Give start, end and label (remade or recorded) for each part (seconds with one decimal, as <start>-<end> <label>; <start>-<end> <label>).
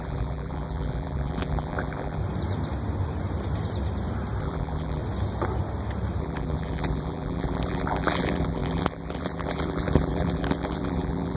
0.0-2.2 remade; 2.2-4.4 recorded; 4.4-5.0 remade; 5.0-6.2 recorded; 6.2-11.4 remade